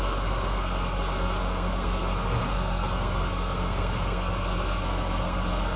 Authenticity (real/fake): fake